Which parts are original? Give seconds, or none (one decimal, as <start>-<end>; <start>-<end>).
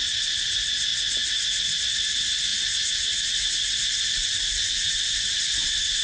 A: 0.9-1.8; 2.5-4.1